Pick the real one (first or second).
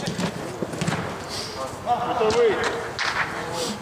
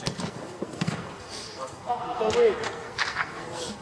first